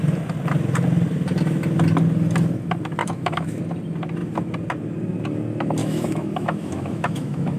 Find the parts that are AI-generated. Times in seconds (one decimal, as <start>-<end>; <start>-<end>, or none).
3.0-3.6; 5.8-7.6